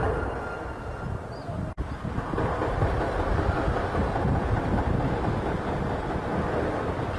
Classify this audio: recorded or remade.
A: recorded